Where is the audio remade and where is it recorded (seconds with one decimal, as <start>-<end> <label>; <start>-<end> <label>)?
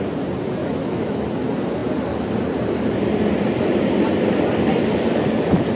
0.0-0.6 recorded; 0.6-1.2 remade; 1.2-5.8 recorded